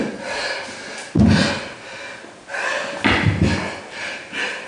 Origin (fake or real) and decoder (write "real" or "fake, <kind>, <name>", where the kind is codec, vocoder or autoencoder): real